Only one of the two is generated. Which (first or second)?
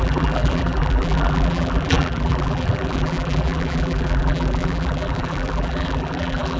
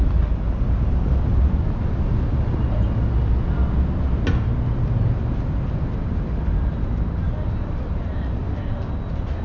first